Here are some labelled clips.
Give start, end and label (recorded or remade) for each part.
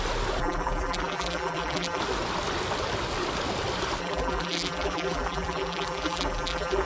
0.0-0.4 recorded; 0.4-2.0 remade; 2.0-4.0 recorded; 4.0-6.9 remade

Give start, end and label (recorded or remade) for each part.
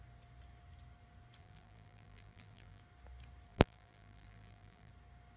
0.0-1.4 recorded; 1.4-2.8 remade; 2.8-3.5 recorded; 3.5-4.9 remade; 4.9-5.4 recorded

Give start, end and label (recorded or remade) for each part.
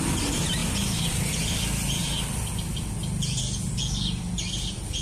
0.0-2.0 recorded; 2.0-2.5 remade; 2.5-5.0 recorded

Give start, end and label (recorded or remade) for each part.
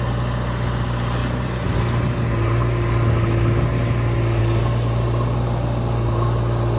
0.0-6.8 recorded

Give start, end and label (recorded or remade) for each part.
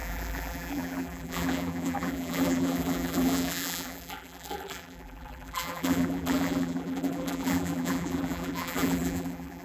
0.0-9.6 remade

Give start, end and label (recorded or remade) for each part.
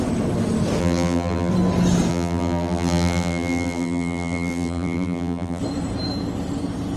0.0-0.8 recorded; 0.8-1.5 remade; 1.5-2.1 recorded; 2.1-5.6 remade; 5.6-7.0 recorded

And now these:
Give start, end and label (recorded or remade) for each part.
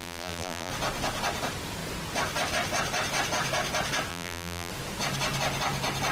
0.0-0.7 remade; 0.7-4.1 recorded; 4.1-4.7 remade; 4.7-6.1 recorded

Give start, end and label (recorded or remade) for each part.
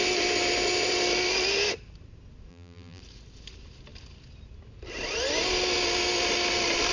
0.0-2.5 recorded; 2.5-3.0 remade; 3.0-6.9 recorded